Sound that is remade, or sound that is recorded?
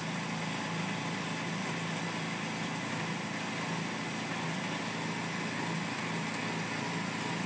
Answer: recorded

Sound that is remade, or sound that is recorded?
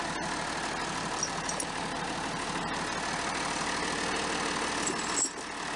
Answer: recorded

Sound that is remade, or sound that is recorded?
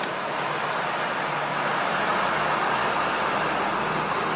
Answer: recorded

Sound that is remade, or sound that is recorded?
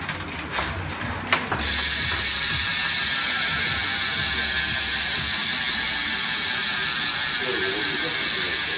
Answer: recorded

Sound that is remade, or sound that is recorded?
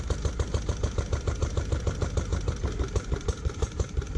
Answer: remade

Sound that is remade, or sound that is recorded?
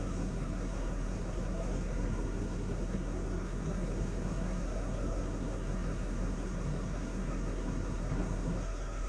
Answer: remade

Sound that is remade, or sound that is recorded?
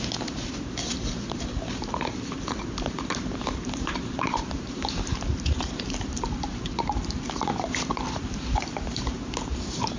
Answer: remade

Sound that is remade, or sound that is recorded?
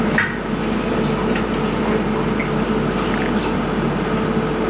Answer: recorded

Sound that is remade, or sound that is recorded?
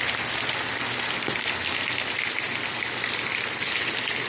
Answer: recorded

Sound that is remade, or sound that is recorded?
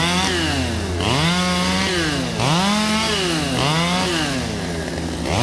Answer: recorded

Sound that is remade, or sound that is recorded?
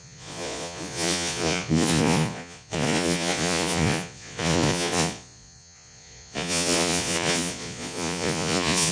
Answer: remade